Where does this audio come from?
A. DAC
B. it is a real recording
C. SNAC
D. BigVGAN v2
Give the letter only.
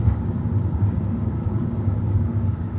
A